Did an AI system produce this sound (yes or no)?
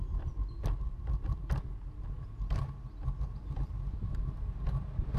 no